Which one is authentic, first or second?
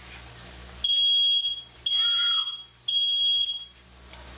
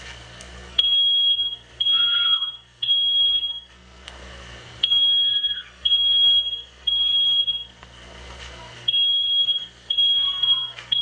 first